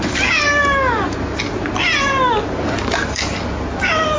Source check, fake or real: real